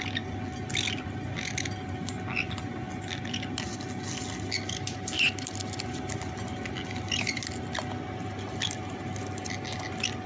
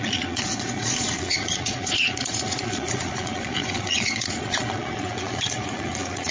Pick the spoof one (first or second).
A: second